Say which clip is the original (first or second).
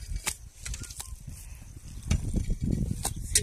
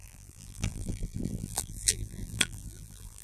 first